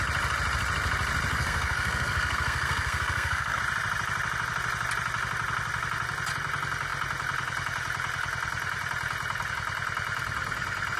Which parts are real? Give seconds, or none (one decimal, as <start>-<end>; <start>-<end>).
0.0-1.3; 3.6-11.0